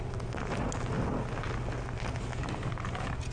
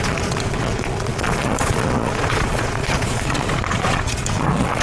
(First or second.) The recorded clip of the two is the first